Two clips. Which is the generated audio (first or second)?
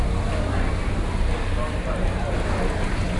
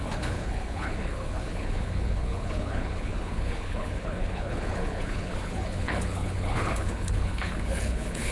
second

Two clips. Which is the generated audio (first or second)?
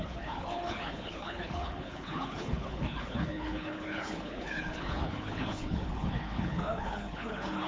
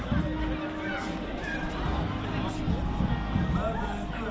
first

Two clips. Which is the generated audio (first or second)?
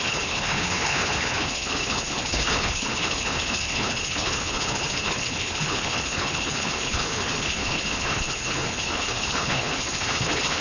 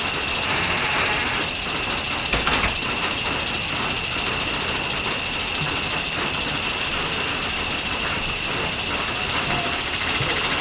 first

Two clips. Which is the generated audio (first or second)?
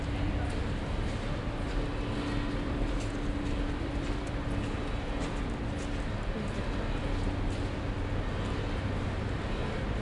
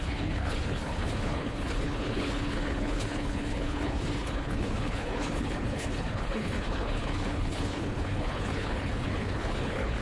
second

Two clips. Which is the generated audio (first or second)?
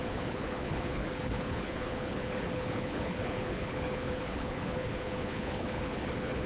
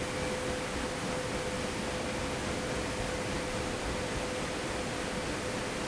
first